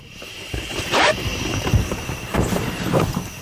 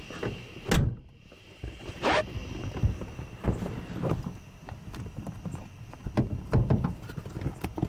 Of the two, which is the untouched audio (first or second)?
second